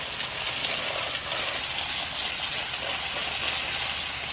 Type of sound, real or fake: real